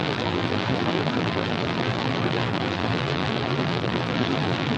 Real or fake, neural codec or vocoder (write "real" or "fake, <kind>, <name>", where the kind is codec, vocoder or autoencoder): fake, vocoder, BigVGAN v2